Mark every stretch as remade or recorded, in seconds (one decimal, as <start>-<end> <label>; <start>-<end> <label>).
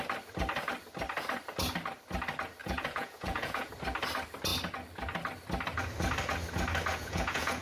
0.0-2.6 recorded; 2.6-3.7 remade; 3.7-6.9 recorded; 6.9-7.6 remade